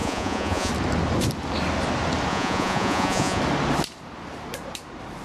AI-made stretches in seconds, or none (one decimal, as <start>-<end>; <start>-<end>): 0.0-0.7; 2.3-3.4